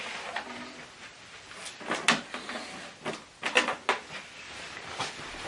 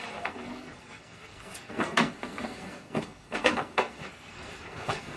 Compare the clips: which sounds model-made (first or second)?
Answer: second